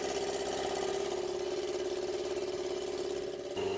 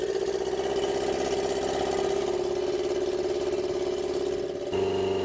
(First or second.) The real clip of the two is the second